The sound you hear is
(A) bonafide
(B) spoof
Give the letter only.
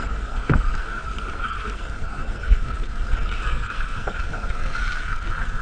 B